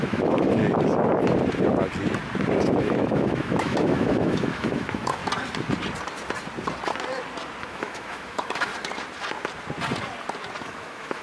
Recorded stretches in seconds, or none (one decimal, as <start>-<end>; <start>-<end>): 0.6-2.8; 5.2-7.6; 8.7-10.6

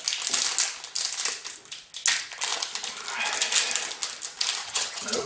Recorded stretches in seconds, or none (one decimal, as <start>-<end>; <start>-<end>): 0.0-4.6

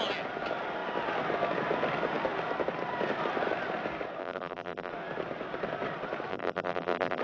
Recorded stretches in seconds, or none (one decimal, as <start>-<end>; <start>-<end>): 0.0-4.2; 4.9-6.3

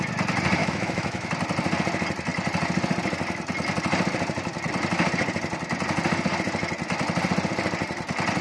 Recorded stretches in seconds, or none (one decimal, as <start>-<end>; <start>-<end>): 0.0-0.6; 1.3-8.4